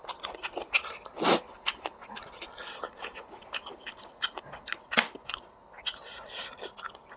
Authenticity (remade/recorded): recorded